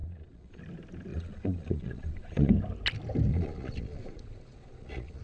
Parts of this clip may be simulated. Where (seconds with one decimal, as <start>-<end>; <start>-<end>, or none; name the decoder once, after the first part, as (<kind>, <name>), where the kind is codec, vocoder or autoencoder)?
0.0-0.6 (vocoder, Vocos); 1.1-2.5; 3.3-5.2